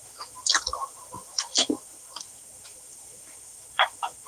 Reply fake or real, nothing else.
fake